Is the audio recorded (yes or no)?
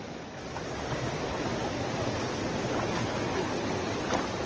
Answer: yes